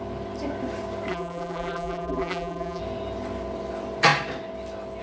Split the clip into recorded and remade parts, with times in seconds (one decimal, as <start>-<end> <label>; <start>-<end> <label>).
0.0-1.1 recorded; 1.1-2.8 remade; 2.8-5.0 recorded